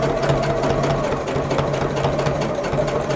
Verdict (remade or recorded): recorded